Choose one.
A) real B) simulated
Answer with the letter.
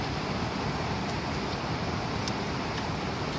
A